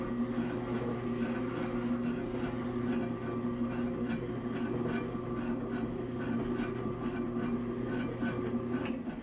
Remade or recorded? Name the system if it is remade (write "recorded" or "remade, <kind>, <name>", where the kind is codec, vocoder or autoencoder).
recorded